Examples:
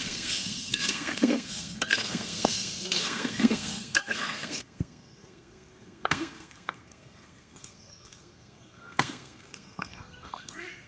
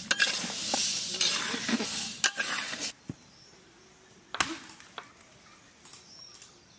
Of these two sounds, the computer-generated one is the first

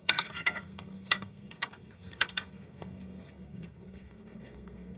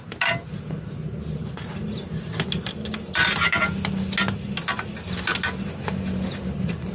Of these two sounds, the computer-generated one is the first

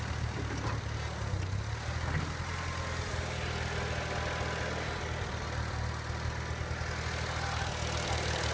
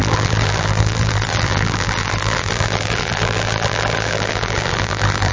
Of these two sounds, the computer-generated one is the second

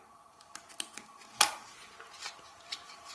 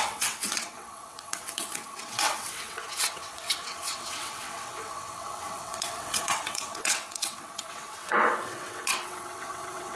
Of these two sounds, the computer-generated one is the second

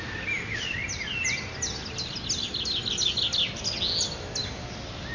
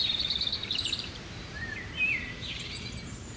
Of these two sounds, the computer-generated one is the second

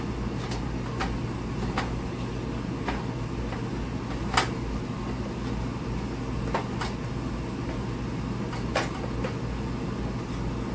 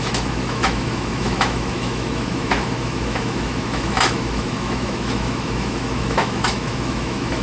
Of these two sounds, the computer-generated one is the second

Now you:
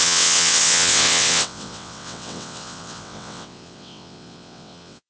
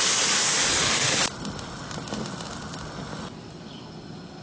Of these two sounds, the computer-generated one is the first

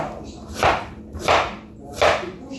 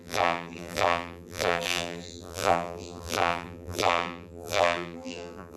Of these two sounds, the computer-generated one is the second